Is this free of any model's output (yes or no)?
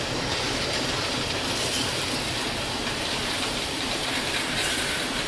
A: no